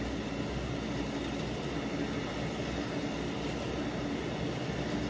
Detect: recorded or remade recorded